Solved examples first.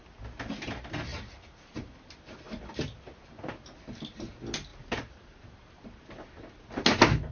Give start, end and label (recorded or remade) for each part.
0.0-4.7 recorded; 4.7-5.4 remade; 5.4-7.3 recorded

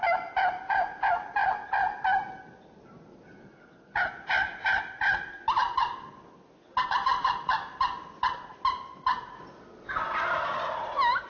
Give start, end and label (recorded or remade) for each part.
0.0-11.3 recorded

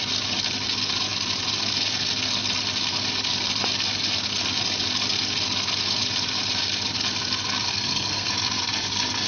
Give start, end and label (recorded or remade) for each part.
0.0-7.7 recorded; 7.7-8.3 remade; 8.3-9.3 recorded

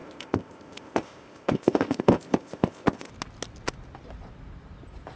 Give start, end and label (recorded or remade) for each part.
0.0-3.1 remade; 3.1-5.2 recorded

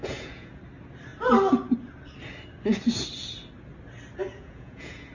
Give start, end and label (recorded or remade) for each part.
0.0-0.6 remade; 0.6-4.3 recorded; 4.3-5.1 remade